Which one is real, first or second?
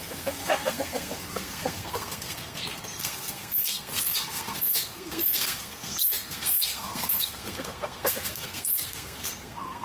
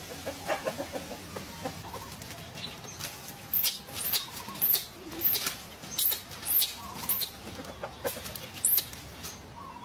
second